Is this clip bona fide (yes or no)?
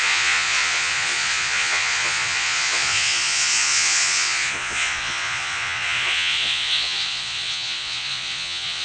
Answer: no